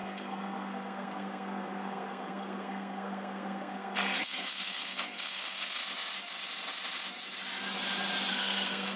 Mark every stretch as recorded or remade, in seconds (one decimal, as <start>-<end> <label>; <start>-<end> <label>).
0.0-5.8 remade; 5.8-8.3 recorded; 8.3-9.0 remade